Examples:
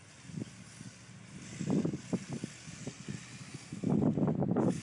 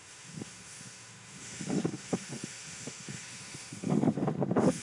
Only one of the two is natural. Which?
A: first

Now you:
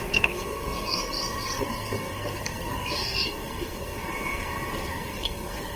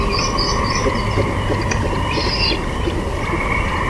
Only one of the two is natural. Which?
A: second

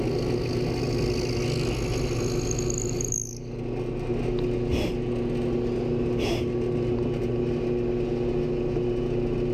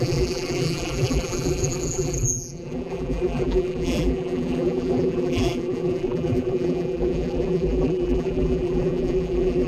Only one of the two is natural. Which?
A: first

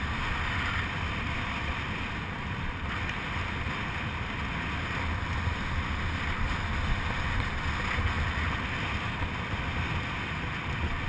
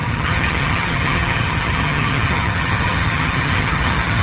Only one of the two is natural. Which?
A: first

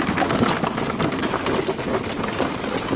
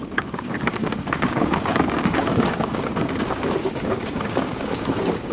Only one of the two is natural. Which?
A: first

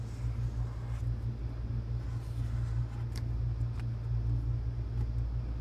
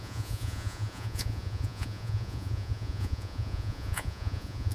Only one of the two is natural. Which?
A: first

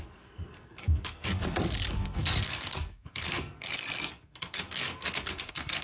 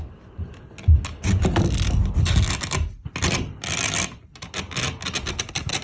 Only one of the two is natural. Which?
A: second